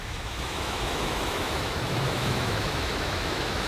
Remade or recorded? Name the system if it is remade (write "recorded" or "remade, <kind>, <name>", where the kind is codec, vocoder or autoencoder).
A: remade, autoencoder, DAC-VAE